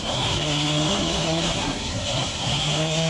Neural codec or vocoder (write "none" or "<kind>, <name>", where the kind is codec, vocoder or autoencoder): codec, SNAC